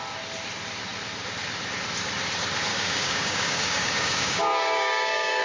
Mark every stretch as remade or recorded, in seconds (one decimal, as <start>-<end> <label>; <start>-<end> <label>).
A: 0.0-2.7 recorded; 2.7-5.4 remade